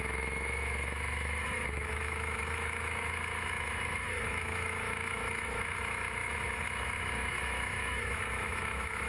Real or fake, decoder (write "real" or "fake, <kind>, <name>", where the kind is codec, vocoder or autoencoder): fake, autoencoder, DAC-VAE